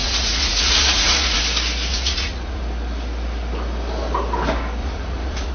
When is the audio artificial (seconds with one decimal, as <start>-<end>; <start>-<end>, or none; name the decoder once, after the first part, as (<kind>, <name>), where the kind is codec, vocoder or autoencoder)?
0.0-1.4 (vocoder, Vocos); 1.9-2.6; 4.8-5.5